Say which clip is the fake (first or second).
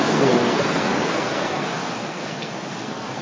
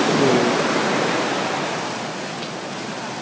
first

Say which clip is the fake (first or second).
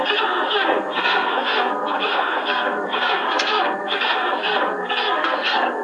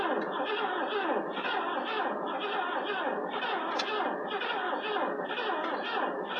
first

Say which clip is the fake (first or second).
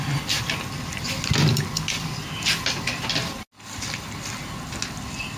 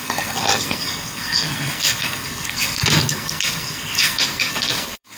second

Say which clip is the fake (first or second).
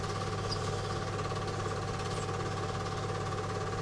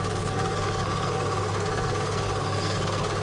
second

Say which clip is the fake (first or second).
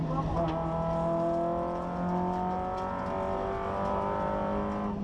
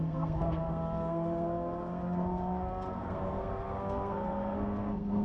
second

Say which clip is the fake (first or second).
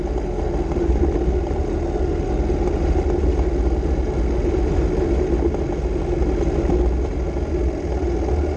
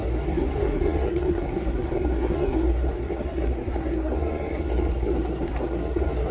second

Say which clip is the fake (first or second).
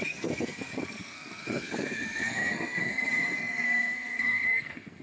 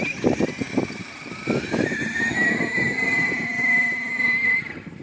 first